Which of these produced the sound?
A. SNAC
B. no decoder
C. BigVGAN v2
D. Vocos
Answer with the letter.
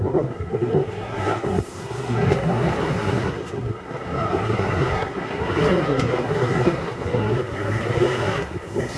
A